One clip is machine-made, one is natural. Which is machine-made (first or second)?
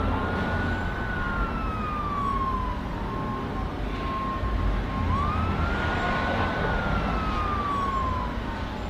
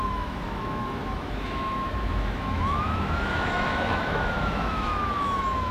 second